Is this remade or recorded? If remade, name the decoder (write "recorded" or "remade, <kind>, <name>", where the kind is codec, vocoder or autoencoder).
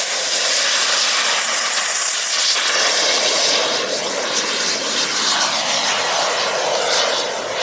recorded